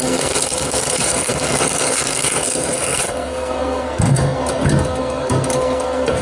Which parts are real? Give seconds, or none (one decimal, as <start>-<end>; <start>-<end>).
none